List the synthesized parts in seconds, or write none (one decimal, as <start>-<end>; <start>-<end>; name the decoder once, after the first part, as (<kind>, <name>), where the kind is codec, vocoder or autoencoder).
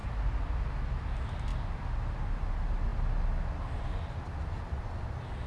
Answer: none